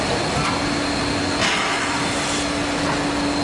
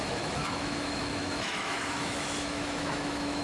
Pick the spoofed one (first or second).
second